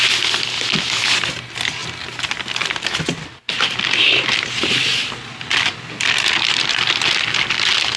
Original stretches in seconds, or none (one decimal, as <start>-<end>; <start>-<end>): 0.0-8.0